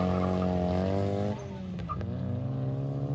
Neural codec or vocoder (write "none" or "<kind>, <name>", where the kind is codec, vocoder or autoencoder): none